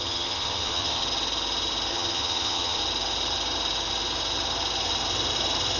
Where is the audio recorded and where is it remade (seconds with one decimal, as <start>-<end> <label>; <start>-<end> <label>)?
0.0-1.0 remade; 1.0-1.9 recorded; 1.9-2.8 remade; 2.8-5.8 recorded